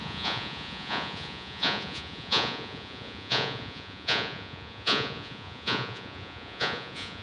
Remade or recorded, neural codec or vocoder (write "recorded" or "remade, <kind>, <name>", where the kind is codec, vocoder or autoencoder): remade, vocoder, Vocos